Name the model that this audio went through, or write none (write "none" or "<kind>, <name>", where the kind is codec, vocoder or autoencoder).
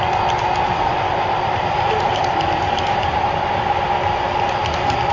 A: none